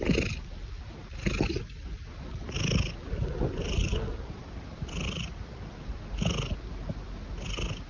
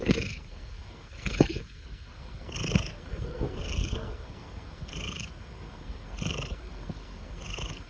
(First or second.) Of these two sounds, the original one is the first